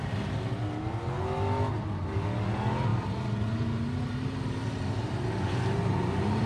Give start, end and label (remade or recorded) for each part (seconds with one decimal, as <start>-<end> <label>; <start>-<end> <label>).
0.0-6.5 recorded